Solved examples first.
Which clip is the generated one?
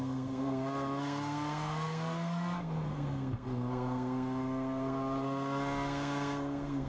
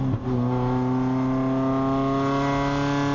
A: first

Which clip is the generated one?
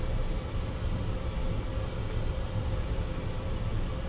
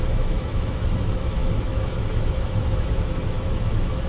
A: second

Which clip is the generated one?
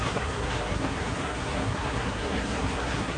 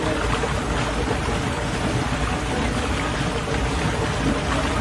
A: first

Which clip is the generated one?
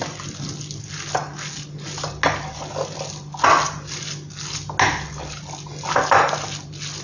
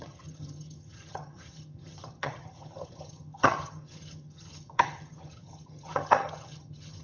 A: second